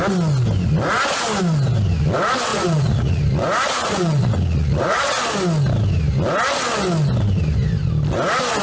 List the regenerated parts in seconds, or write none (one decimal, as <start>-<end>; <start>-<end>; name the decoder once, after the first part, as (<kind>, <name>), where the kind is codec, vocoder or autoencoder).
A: 2.5-3.2 (vocoder, Vocos); 3.8-5.0